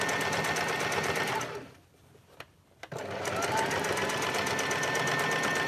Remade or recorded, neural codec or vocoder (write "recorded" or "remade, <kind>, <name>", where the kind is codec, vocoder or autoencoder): recorded